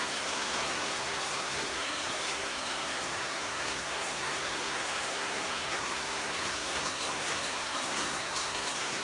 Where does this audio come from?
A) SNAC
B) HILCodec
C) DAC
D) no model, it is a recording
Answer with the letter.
A